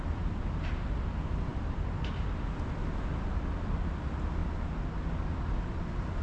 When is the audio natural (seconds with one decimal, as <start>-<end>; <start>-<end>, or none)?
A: 0.0-6.2